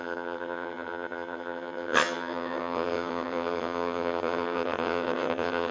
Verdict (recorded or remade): remade